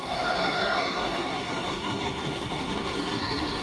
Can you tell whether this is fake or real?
fake